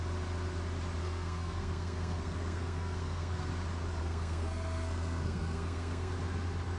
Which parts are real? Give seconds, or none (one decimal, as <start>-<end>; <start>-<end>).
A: 0.0-1.0; 3.5-4.0; 6.1-6.8